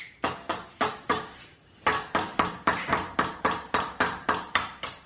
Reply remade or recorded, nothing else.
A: recorded